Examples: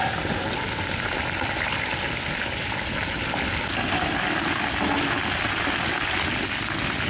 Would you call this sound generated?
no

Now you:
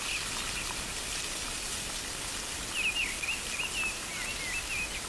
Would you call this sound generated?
no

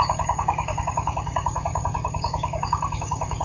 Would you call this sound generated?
yes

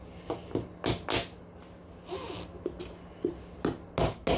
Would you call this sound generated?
no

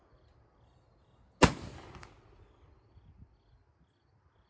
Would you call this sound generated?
no